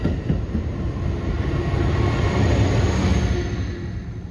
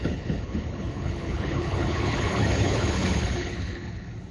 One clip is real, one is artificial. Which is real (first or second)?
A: first